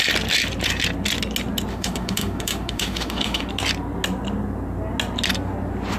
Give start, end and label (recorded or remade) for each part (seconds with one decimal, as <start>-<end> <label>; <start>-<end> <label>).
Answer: 0.0-1.7 recorded; 1.7-3.5 remade; 3.5-6.0 recorded